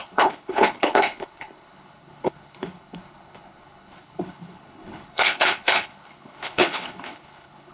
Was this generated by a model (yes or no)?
yes